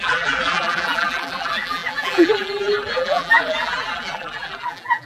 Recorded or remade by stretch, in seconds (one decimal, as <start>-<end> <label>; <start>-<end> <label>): 0.0-5.1 remade